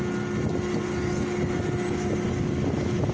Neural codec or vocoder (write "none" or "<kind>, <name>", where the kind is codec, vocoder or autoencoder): none